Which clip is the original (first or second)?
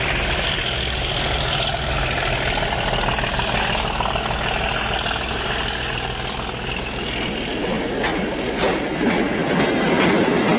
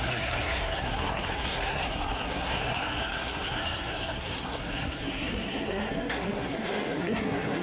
first